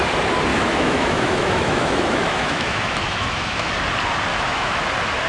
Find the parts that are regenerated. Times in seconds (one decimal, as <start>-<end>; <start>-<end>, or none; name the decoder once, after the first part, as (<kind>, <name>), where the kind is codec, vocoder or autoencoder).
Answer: 0.5-3.7 (autoencoder, DAC-VAE); 4.3-4.8